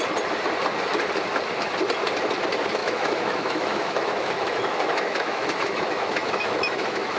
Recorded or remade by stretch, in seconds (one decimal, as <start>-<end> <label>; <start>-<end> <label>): 0.0-2.8 recorded; 2.8-7.2 remade